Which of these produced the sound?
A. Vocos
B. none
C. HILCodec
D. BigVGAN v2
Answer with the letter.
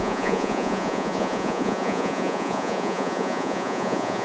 A